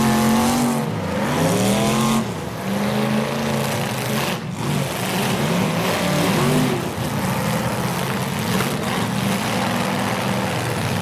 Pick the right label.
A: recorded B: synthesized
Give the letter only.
A